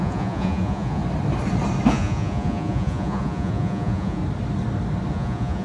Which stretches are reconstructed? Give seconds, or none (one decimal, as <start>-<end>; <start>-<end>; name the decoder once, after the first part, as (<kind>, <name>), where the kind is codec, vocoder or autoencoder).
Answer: 0.0-1.0 (vocoder, Vocos); 1.9-4.2; 5.1-5.6